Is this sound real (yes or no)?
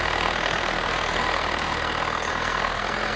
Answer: no